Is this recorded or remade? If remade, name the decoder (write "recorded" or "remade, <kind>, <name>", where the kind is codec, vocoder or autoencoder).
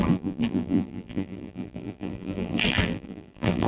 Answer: remade, vocoder, BigVGAN v2